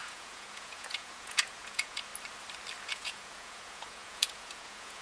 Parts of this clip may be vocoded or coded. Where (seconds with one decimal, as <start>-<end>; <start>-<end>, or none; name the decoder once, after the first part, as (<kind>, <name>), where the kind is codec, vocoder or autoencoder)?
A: 0.0-2.1 (vocoder, Vocos); 2.8-5.0